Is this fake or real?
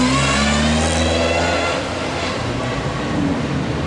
real